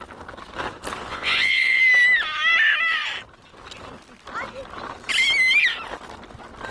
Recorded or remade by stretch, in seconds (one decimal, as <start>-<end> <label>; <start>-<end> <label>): 0.0-1.1 recorded; 1.1-1.8 remade; 1.8-6.7 recorded